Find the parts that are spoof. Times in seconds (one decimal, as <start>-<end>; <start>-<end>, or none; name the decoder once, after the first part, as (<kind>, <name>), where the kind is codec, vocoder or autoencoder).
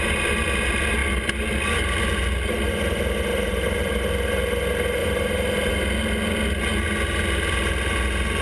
3.3-3.9 (vocoder, BigVGAN v2); 5.0-5.7